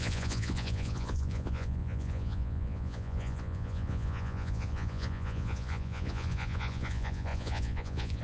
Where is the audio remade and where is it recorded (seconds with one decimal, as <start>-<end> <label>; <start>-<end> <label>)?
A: 0.0-8.2 remade